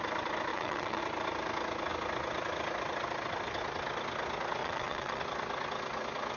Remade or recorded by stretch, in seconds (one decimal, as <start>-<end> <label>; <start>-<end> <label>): 0.0-0.5 recorded; 0.5-1.0 remade; 1.0-4.6 recorded; 4.6-5.2 remade; 5.2-6.4 recorded